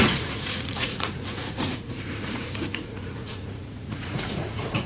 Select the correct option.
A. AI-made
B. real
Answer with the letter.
A